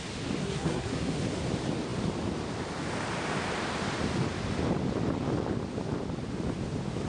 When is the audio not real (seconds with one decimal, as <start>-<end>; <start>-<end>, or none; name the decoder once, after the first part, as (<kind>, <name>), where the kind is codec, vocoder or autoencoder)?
0.4-1.2 (codec, SNAC)